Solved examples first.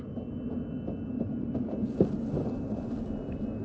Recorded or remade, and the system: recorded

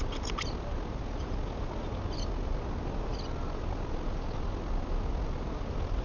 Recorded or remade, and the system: recorded